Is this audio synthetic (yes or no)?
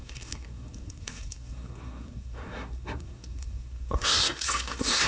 yes